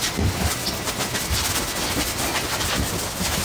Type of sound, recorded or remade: remade